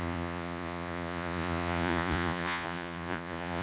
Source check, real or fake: fake